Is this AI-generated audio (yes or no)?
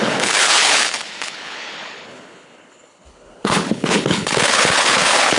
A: yes